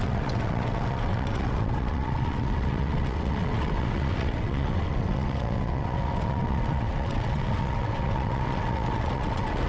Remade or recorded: remade